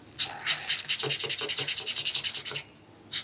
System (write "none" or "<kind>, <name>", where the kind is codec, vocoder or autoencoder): none